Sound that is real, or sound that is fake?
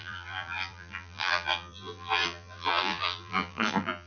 fake